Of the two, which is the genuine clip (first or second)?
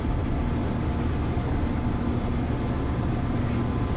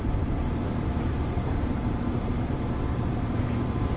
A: first